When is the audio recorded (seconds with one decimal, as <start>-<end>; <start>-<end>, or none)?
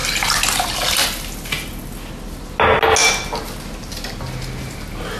0.0-5.2